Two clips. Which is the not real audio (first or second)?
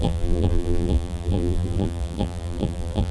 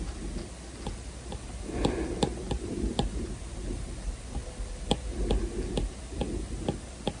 first